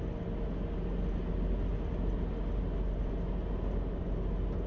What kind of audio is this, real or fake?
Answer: real